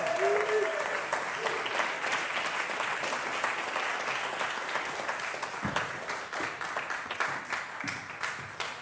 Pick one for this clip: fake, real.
real